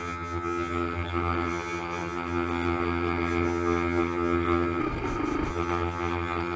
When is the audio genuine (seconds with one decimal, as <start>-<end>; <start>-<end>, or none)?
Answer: 4.8-5.5